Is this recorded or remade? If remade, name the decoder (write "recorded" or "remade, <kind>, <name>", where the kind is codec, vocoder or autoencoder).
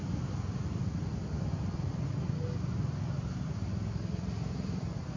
recorded